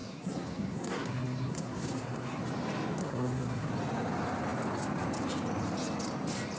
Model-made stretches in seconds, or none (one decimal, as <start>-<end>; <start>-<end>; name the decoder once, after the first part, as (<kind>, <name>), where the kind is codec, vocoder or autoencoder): 0.0-2.4 (codec, SNAC); 3.0-3.7